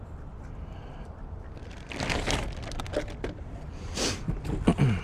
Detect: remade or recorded recorded